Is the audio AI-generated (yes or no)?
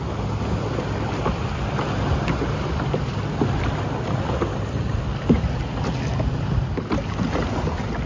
no